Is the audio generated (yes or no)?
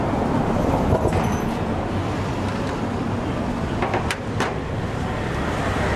yes